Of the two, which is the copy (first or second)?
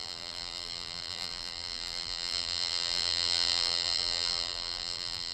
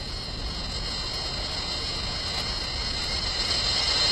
first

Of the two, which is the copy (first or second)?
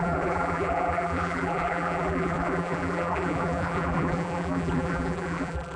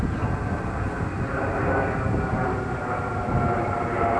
first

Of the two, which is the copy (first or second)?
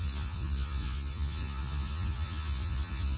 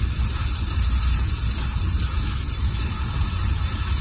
first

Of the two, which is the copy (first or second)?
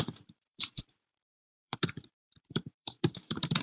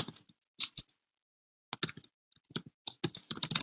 first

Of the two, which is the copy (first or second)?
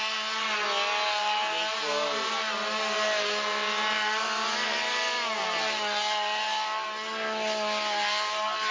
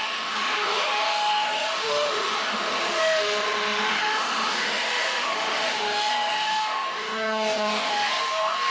second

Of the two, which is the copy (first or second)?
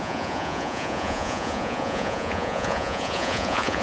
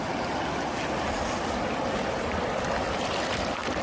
first